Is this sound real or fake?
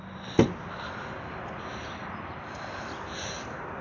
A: real